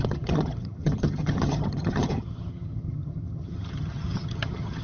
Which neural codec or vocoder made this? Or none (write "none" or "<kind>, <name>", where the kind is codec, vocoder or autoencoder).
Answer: vocoder, HiFi-GAN